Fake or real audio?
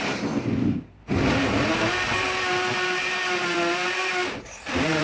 fake